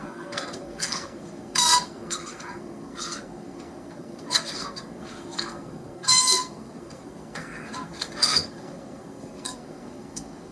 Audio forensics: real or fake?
fake